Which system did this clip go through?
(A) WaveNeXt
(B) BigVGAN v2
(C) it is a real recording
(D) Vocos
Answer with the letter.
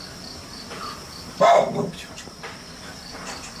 B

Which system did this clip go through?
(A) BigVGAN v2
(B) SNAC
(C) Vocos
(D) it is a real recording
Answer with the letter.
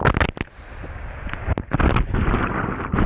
D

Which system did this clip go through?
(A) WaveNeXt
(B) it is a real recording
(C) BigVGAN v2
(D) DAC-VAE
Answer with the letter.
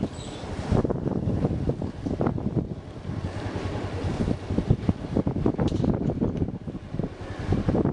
B